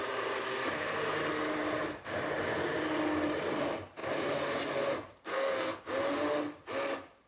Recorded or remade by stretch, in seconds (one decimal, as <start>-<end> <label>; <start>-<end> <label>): 0.0-5.3 recorded; 5.3-5.8 remade; 5.8-7.3 recorded

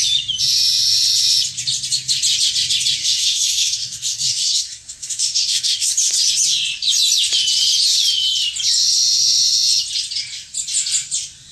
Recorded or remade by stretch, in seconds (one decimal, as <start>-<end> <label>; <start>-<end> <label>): 0.0-3.0 recorded; 3.0-5.9 remade; 5.9-11.5 recorded

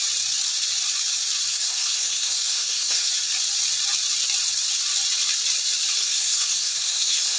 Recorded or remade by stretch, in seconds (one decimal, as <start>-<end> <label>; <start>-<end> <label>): 0.0-1.5 recorded; 1.5-3.1 remade; 3.1-6.0 recorded; 6.0-7.4 remade

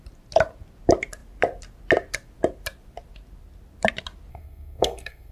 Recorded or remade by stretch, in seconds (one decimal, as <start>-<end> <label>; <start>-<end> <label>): 0.0-4.3 recorded; 4.3-5.3 remade

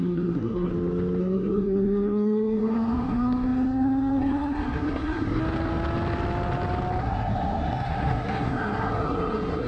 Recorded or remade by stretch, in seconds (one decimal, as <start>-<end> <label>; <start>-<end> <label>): 0.0-0.7 remade; 0.7-1.2 recorded; 1.2-5.4 remade; 5.4-7.0 recorded; 7.0-9.7 remade